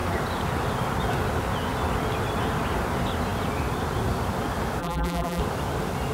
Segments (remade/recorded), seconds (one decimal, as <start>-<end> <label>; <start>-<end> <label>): 0.0-4.8 recorded; 4.8-5.4 remade; 5.4-6.1 recorded